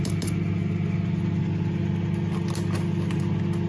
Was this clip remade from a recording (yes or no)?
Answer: no